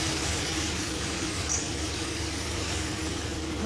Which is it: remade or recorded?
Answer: remade